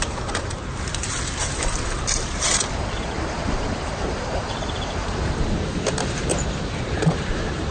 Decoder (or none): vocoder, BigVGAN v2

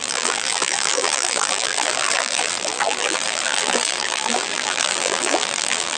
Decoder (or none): vocoder, BigVGAN v2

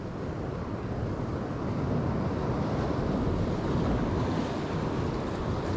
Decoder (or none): none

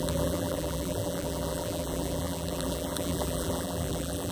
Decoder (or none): vocoder, BigVGAN v2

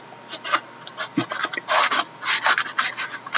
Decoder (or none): none